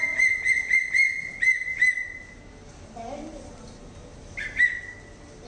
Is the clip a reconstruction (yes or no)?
no